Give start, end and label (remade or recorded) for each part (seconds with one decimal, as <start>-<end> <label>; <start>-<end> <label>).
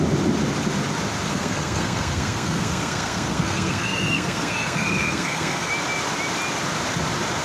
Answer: 0.0-1.3 recorded; 1.3-5.7 remade; 5.7-7.4 recorded